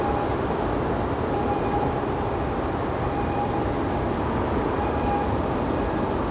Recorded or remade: recorded